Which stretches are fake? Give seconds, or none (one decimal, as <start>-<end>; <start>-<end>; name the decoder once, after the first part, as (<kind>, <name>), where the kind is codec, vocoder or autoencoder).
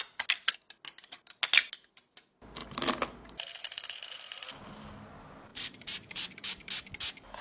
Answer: 5.5-6.7 (vocoder, BigVGAN v2)